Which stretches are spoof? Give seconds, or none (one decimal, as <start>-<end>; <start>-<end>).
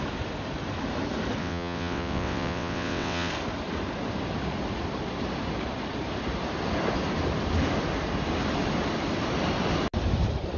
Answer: 1.4-3.3